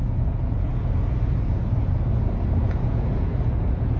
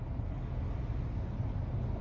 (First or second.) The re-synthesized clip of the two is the first